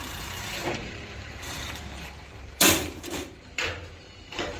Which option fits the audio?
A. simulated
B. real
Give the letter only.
A